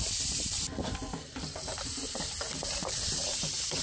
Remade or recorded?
recorded